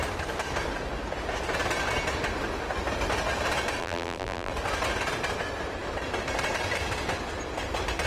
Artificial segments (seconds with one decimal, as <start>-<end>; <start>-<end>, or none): 3.8-4.5